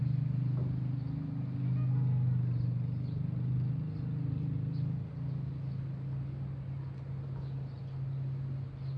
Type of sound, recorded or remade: recorded